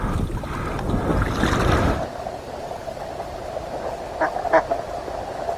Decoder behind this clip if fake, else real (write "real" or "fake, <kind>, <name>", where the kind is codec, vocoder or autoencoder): real